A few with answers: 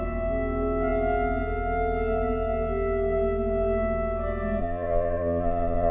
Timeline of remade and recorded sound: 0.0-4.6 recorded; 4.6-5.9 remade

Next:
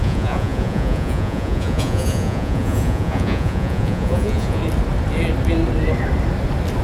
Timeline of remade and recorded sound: 0.0-4.6 remade; 4.6-6.8 recorded

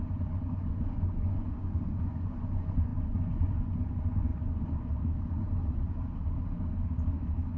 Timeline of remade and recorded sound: 0.0-4.3 remade; 4.3-7.6 recorded

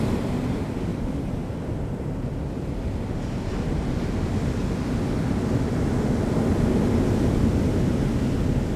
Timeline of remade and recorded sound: 0.0-8.8 recorded

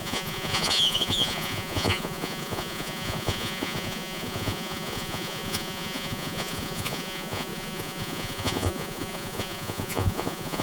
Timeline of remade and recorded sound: 0.0-10.6 remade

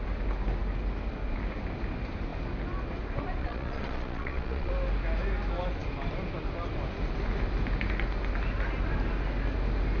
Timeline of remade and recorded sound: 0.0-3.4 recorded; 3.4-4.7 remade; 4.7-10.0 recorded

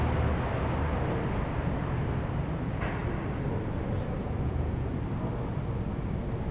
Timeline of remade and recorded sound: 0.0-4.2 recorded; 4.2-4.9 remade; 4.9-6.5 recorded

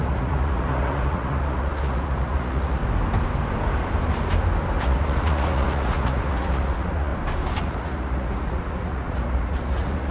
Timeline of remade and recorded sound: 0.0-2.8 remade; 2.8-4.8 recorded; 4.8-7.1 remade; 7.1-7.6 recorded; 7.6-10.1 remade